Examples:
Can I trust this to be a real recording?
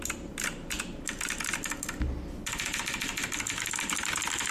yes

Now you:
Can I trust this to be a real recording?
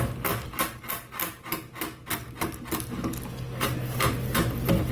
yes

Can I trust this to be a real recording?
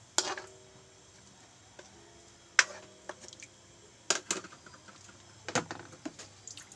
yes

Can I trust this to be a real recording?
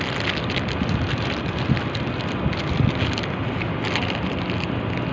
yes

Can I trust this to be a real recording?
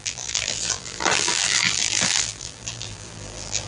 no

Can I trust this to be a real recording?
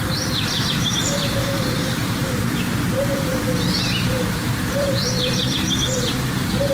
no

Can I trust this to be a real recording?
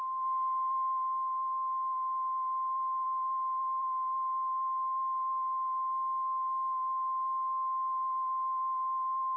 no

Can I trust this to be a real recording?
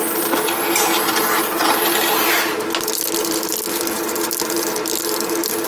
yes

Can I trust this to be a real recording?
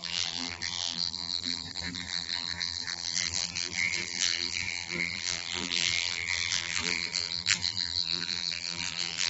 no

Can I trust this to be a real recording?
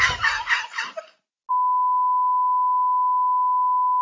yes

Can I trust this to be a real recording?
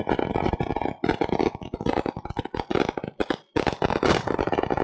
no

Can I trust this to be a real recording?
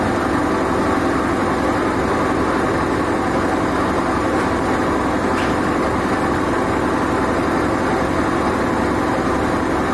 yes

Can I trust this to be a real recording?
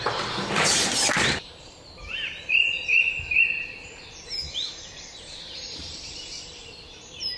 no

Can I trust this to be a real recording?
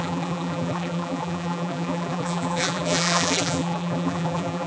no